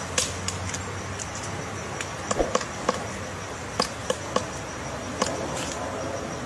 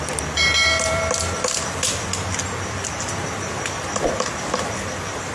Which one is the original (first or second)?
first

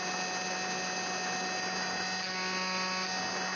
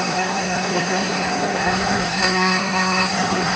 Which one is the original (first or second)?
first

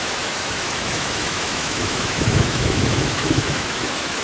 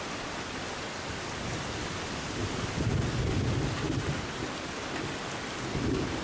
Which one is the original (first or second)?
second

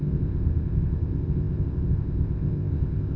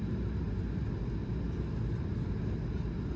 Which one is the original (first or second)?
second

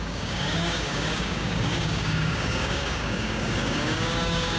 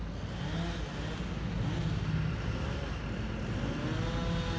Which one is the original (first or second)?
second